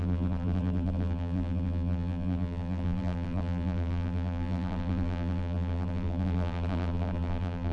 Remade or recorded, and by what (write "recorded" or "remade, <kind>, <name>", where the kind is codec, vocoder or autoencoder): remade, vocoder, BigVGAN v2